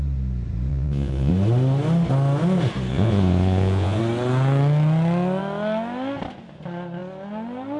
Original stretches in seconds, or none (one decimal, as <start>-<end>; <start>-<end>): 0.0-0.7; 1.3-2.9; 4.0-7.8